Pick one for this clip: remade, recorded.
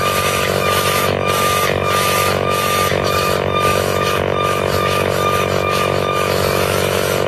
remade